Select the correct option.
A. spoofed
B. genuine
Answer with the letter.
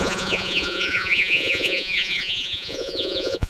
A